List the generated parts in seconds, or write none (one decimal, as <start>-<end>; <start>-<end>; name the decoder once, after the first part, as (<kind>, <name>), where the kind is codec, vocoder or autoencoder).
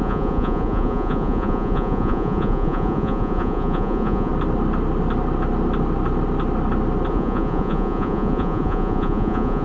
0.0-4.3 (vocoder, Vocos); 7.1-9.6